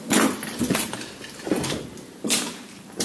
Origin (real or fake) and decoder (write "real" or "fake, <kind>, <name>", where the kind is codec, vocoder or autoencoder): fake, vocoder, BigVGAN v2